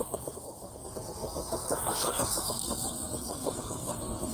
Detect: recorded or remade remade